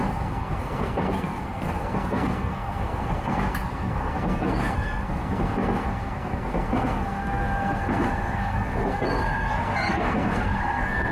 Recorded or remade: remade